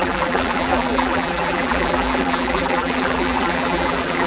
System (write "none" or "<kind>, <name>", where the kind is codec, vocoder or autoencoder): vocoder, BigVGAN v2